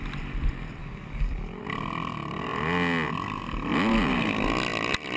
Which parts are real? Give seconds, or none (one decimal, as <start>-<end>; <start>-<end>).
0.0-0.8; 1.6-5.2